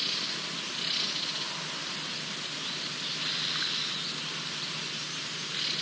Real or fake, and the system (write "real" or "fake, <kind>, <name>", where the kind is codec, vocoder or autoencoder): real